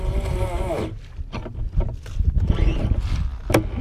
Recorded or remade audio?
recorded